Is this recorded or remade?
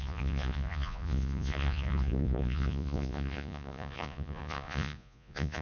remade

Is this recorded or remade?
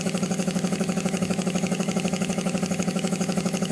remade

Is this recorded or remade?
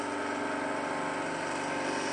recorded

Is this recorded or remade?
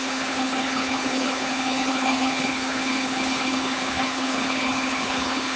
remade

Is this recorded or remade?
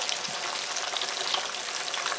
recorded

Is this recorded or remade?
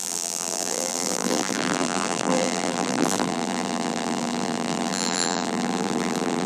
remade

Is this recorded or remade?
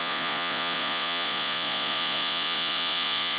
remade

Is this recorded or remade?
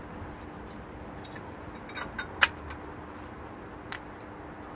recorded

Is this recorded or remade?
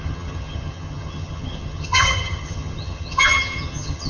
remade